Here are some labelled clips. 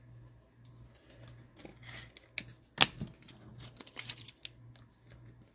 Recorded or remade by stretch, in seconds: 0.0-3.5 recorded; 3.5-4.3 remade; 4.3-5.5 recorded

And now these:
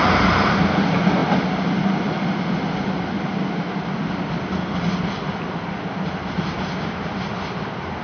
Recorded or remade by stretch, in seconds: 0.0-8.0 recorded

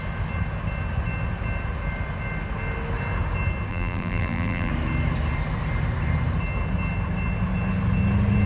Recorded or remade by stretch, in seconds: 0.0-3.7 recorded; 3.7-4.7 remade; 4.7-8.5 recorded

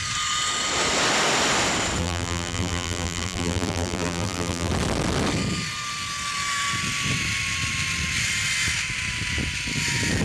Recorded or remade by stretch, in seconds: 0.0-2.0 recorded; 2.0-4.7 remade; 4.7-10.2 recorded

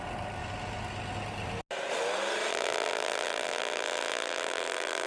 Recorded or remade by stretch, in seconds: 0.0-2.5 recorded; 2.5-5.1 remade